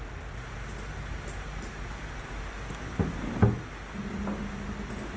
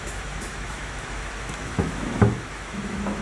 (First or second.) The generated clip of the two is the second